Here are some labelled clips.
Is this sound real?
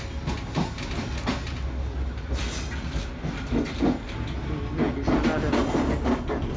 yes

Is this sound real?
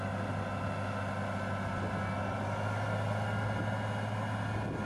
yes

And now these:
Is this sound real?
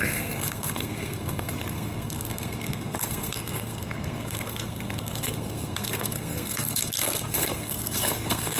no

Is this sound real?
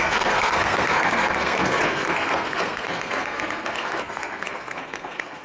no